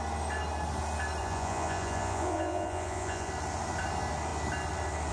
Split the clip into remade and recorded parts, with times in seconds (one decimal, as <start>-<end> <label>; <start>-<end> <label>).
0.0-1.2 recorded; 1.2-3.3 remade; 3.3-5.1 recorded